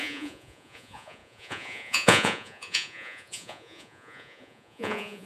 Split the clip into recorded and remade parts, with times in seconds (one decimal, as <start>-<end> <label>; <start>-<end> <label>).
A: 0.0-5.3 remade